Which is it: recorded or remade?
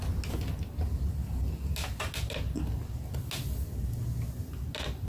recorded